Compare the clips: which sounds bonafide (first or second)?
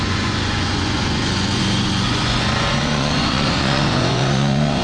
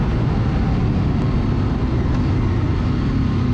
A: second